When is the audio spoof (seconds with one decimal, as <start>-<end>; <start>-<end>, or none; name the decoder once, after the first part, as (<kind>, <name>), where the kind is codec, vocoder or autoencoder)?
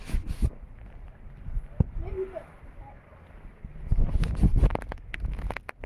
none